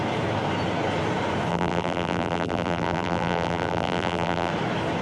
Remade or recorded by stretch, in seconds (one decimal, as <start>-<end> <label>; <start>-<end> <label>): 0.0-1.5 recorded; 1.5-4.5 remade; 4.5-5.0 recorded